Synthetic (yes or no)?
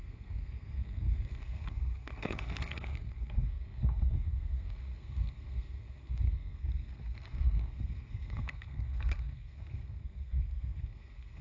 yes